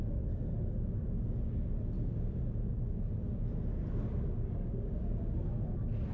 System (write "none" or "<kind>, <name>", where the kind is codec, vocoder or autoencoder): none